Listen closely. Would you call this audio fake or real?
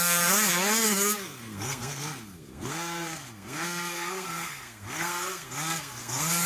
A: fake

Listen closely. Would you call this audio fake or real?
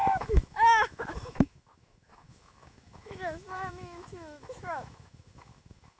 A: fake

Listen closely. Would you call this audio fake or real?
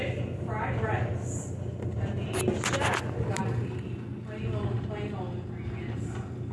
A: real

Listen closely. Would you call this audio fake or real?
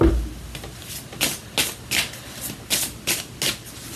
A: real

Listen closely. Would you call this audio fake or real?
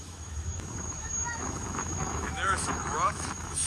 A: fake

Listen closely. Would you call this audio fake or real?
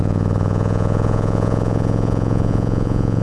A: fake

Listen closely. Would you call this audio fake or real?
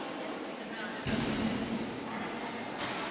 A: real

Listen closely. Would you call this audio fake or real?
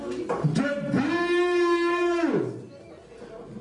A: real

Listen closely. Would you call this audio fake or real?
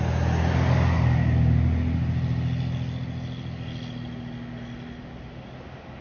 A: real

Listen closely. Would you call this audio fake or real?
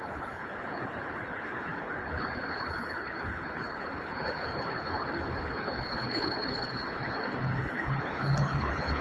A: fake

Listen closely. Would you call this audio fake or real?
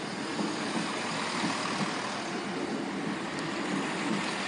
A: real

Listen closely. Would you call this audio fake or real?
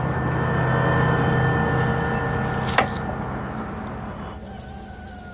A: real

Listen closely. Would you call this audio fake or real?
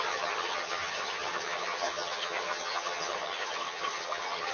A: fake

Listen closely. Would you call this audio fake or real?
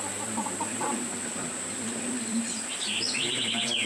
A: fake